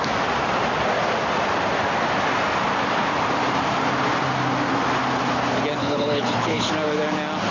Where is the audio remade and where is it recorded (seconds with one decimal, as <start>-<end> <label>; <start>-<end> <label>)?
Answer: 0.0-5.8 recorded; 5.8-6.7 remade; 6.7-7.5 recorded